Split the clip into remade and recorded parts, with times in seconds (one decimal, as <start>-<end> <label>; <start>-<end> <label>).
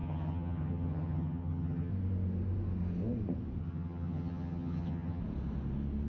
0.0-1.9 remade; 1.9-3.6 recorded; 3.6-5.2 remade; 5.2-6.1 recorded